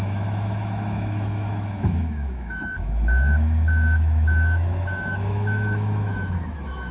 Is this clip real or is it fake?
fake